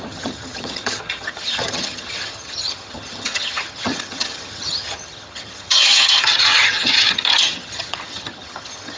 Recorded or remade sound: remade